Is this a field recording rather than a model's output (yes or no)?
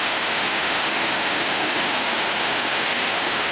no